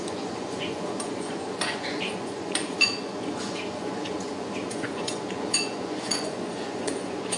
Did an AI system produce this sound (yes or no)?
yes